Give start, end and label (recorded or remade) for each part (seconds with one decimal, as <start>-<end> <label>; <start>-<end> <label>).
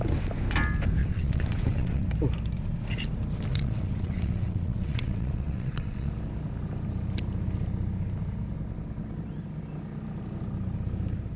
0.0-1.0 recorded; 1.0-2.1 remade; 2.1-3.5 recorded; 3.5-6.1 remade; 6.1-11.4 recorded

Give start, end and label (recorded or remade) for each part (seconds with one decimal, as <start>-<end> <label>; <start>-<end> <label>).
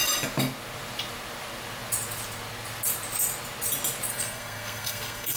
0.0-4.1 recorded; 4.1-5.4 remade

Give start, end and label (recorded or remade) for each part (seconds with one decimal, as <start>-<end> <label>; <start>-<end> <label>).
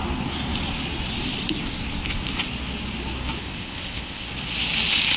0.0-3.4 recorded; 3.4-4.3 remade; 4.3-5.2 recorded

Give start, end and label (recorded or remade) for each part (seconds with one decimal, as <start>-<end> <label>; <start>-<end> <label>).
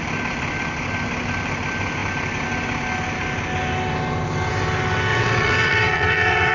0.0-5.1 recorded; 5.1-6.5 remade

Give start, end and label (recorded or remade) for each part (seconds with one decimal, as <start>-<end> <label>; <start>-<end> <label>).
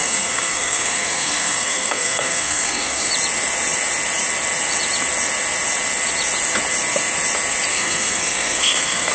0.0-3.1 remade; 3.1-7.7 recorded; 7.7-9.1 remade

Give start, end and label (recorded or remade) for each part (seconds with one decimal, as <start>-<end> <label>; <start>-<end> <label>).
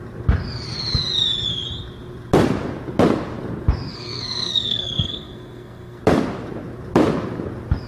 0.0-3.9 recorded; 3.9-6.0 remade; 6.0-7.9 recorded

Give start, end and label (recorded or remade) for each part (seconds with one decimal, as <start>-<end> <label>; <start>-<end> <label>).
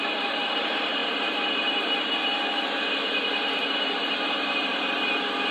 0.0-5.5 remade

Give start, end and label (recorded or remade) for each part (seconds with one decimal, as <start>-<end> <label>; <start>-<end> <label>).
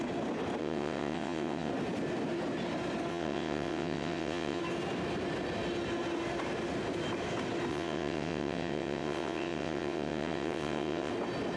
0.0-0.6 recorded; 0.6-1.7 remade; 1.7-3.1 recorded; 3.1-4.6 remade; 4.6-7.7 recorded; 7.7-11.1 remade; 11.1-11.6 recorded